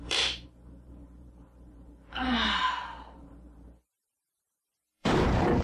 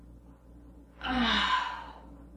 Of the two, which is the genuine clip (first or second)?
second